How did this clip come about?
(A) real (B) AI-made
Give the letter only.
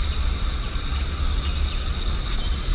A